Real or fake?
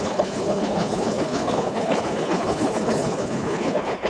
fake